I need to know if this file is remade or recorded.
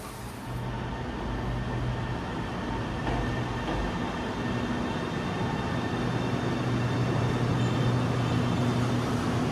recorded